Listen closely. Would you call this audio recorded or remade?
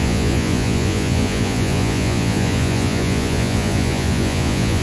remade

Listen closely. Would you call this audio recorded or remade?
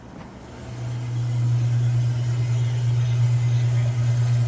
recorded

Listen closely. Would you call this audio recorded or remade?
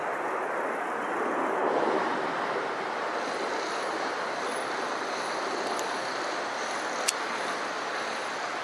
recorded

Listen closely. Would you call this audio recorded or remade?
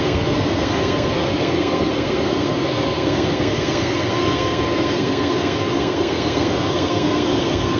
remade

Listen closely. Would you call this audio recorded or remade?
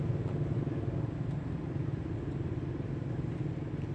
recorded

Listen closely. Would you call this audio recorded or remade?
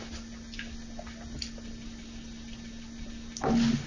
recorded